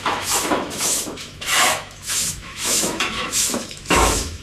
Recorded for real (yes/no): no